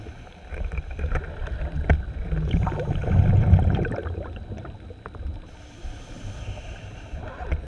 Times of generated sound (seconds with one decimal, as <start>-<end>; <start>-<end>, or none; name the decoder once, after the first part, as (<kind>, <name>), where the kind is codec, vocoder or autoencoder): none